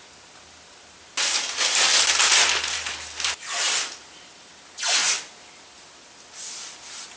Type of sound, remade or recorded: recorded